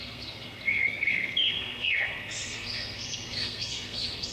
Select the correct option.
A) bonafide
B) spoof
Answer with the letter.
B